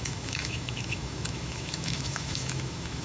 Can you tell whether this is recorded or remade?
remade